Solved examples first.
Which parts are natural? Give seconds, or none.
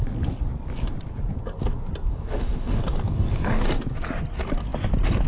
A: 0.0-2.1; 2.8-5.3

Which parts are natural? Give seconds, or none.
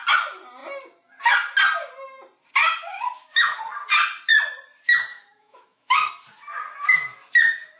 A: 0.0-2.6; 3.6-5.1; 6.1-7.8